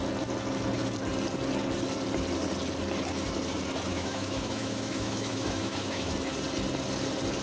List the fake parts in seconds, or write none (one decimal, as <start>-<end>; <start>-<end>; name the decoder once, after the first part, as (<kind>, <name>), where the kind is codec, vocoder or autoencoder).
3.9-6.1 (autoencoder, DAC-VAE)